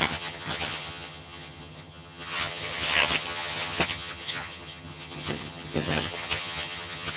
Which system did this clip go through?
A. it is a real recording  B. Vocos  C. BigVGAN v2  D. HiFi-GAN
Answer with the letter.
D